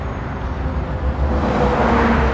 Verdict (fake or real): real